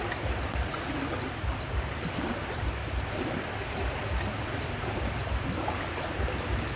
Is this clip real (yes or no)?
yes